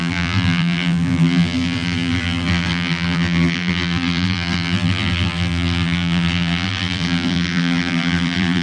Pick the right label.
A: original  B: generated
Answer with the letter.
B